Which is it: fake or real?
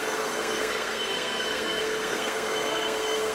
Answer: fake